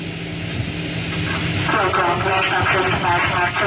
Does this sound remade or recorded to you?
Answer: recorded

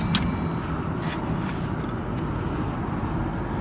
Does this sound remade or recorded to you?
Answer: recorded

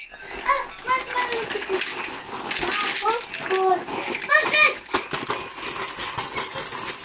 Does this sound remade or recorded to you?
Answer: recorded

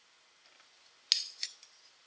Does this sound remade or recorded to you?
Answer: recorded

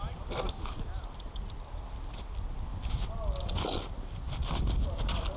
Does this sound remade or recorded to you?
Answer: recorded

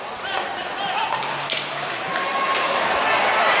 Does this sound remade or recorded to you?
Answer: recorded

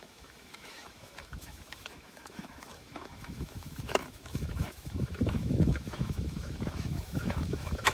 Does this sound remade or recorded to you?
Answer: remade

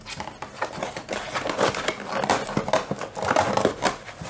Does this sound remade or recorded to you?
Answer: recorded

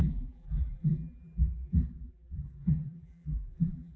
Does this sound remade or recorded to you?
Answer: remade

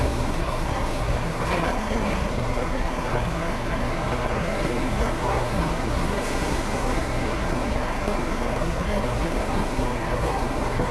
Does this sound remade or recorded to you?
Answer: remade